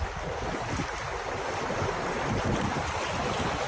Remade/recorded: recorded